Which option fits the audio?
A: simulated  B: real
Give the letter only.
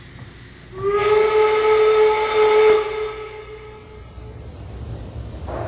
B